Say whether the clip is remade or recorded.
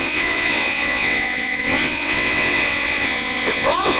remade